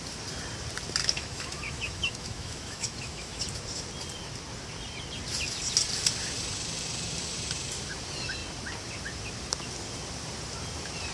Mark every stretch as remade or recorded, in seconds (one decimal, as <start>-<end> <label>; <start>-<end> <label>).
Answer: 0.0-1.0 recorded; 1.0-3.4 remade; 3.4-11.1 recorded